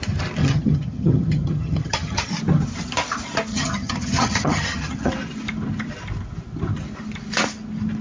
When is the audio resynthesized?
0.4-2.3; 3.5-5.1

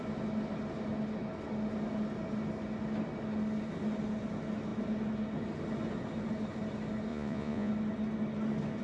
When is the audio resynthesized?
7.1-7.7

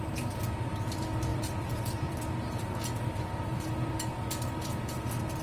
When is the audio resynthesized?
1.3-3.9

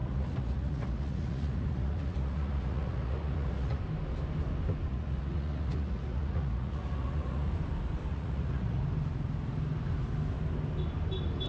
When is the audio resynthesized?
0.0-3.8; 4.9-7.5; 8.1-8.8